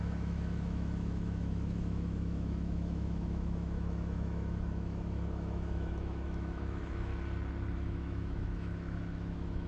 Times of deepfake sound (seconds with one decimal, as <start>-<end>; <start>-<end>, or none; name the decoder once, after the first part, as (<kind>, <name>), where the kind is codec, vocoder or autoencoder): 0.0-7.1 (autoencoder, DAC-VAE); 7.7-9.7